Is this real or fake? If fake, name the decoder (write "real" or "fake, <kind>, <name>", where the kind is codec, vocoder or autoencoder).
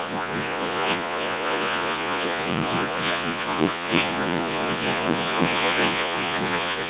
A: fake, vocoder, Vocos